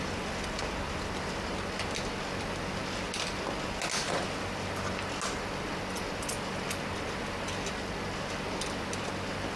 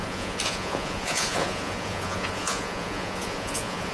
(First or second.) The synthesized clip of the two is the second